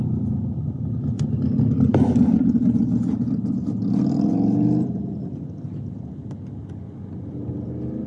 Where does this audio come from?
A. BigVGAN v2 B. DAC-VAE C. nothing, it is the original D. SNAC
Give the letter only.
C